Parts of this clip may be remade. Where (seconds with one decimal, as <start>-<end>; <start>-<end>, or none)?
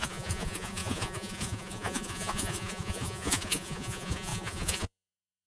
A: 0.0-5.5